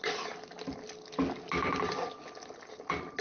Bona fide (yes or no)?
yes